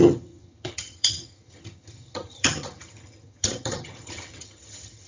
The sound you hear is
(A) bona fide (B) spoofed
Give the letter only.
B